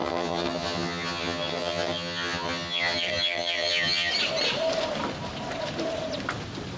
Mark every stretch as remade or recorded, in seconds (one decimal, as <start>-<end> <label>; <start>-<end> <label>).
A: 0.0-4.1 remade; 4.1-6.8 recorded